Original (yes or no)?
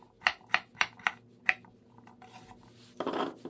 yes